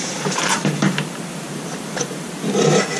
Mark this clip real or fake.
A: fake